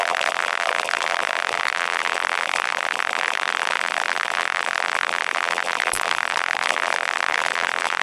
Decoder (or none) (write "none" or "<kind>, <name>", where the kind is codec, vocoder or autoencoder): vocoder, BigVGAN v2